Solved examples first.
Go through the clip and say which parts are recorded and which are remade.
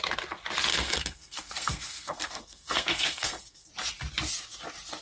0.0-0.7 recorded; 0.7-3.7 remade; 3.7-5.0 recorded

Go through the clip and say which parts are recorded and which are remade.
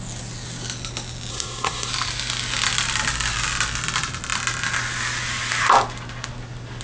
0.0-1.3 recorded; 1.3-1.9 remade; 1.9-6.8 recorded